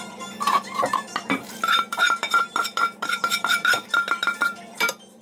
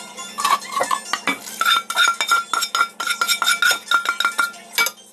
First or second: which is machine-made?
first